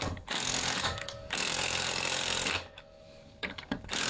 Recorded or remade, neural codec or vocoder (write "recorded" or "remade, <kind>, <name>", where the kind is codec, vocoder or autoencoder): remade, codec, DAC